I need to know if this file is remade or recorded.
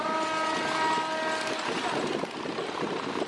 recorded